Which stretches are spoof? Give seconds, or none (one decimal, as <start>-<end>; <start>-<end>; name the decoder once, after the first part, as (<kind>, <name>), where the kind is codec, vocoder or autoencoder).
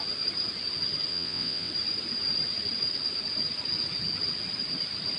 1.1-1.7 (vocoder, WaveNeXt)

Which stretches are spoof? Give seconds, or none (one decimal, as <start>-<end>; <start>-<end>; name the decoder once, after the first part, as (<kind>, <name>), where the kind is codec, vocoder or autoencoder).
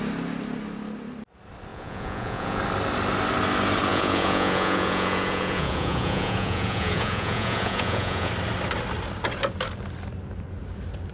1.7-2.6 (vocoder, Vocos); 3.9-8.3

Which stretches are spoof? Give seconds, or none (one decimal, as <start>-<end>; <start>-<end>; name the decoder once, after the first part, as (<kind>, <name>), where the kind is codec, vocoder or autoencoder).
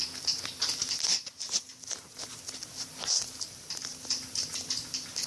3.9-5.3 (vocoder, BigVGAN v2)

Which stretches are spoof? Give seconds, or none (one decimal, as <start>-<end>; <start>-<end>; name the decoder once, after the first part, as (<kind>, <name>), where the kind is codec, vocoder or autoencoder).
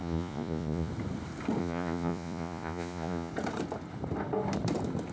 0.0-0.9 (vocoder, Vocos); 1.6-3.3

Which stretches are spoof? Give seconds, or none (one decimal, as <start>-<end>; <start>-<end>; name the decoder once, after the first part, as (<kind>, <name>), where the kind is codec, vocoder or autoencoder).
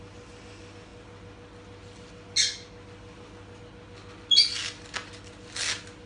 none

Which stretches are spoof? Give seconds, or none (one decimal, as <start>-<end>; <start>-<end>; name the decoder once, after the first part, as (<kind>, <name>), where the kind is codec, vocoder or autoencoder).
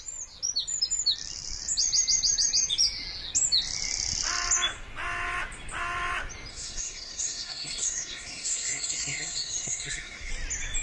6.5-10.3 (codec, SNAC)